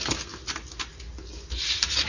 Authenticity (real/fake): real